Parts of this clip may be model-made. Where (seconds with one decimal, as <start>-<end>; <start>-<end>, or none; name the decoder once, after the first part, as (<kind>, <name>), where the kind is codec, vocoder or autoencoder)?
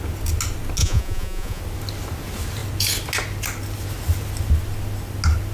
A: 0.8-1.6 (vocoder, Vocos)